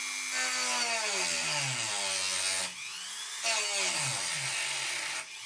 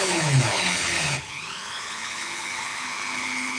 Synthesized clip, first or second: second